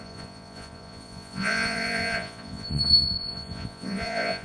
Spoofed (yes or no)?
yes